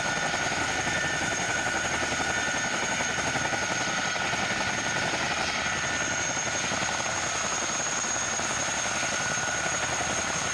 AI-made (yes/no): no